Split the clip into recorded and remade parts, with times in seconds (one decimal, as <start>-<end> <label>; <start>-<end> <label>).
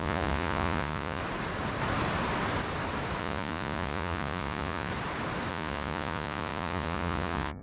0.0-1.2 remade; 1.2-3.2 recorded; 3.2-4.9 remade; 4.9-5.5 recorded; 5.5-7.6 remade